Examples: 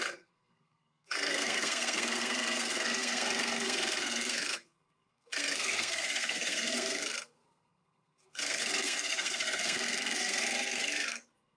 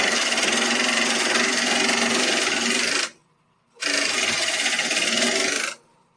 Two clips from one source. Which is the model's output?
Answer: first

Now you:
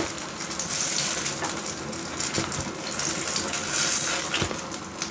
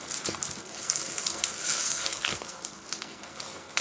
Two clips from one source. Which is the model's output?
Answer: second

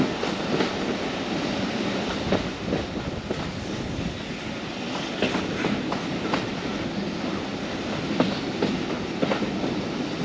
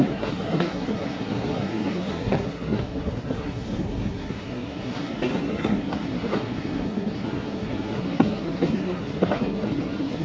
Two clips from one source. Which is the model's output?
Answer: second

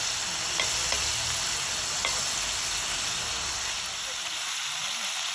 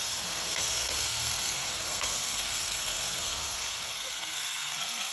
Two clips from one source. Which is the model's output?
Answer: second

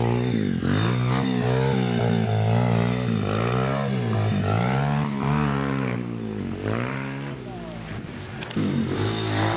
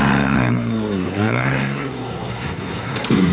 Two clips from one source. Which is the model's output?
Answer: second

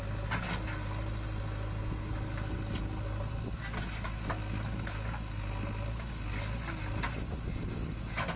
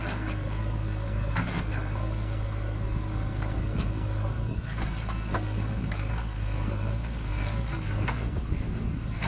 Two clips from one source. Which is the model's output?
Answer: second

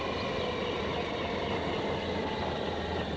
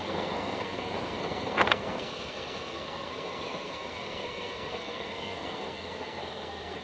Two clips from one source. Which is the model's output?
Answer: second